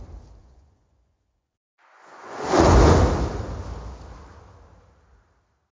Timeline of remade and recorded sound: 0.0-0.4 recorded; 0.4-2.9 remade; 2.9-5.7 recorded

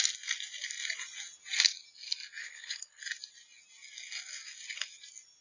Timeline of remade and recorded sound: 0.0-2.4 recorded; 2.4-3.0 remade; 3.0-5.4 recorded

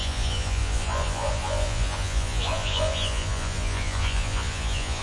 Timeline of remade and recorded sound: 0.0-5.0 remade

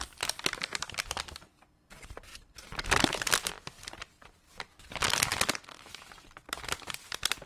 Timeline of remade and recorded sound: 0.0-2.3 recorded; 2.3-3.5 remade; 3.5-7.5 recorded

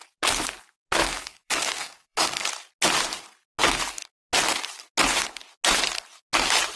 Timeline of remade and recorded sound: 0.0-1.0 recorded; 1.0-2.5 remade; 2.5-6.8 recorded

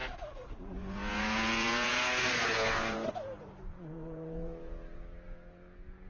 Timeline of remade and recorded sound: 0.0-6.1 remade